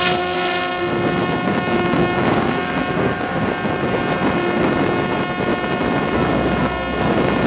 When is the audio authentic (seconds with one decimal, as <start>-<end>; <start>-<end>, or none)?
0.0-1.2; 3.5-7.5